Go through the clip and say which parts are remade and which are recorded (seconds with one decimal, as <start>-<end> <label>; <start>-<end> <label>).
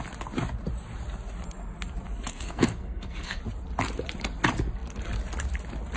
0.0-2.3 recorded; 2.3-3.4 remade; 3.4-6.0 recorded